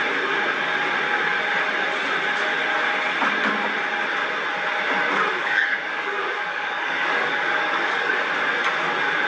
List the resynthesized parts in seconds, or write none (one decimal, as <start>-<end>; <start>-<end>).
5.4-8.1